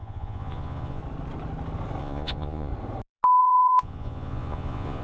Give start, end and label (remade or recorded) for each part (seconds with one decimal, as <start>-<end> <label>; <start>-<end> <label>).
0.0-1.0 remade; 1.0-2.0 recorded; 2.0-2.7 remade; 2.7-3.4 recorded; 3.4-5.0 remade